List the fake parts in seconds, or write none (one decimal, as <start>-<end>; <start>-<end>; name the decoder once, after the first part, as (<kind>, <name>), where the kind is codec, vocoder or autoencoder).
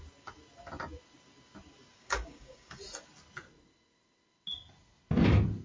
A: 2.0-2.8 (codec, DAC)